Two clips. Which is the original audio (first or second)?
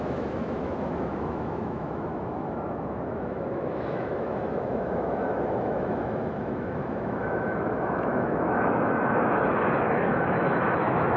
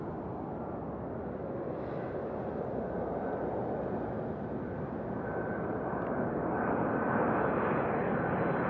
second